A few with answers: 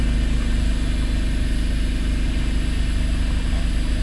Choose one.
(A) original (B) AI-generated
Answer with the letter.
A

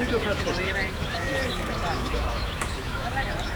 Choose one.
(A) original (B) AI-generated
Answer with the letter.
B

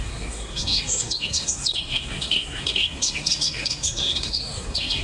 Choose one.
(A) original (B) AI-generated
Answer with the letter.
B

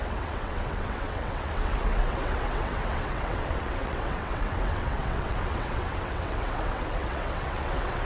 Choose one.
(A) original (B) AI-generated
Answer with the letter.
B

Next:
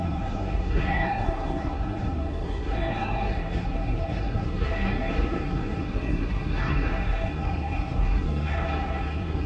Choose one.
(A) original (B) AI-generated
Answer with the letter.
B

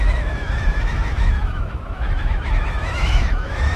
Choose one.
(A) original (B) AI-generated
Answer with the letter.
B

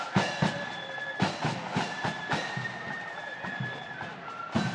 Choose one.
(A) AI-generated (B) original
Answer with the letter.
B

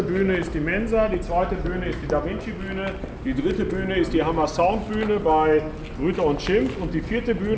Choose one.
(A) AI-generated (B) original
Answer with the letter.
B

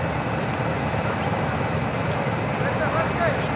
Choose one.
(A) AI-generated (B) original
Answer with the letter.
B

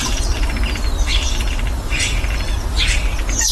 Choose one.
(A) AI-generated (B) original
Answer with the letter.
A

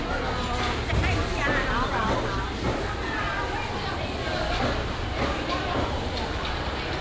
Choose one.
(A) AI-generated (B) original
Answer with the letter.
B